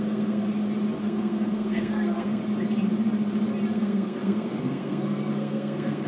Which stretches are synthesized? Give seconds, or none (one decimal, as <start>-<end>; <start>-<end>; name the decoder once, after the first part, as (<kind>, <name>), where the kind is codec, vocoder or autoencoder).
0.0-0.5 (codec, SNAC); 1.0-2.4; 3.7-6.1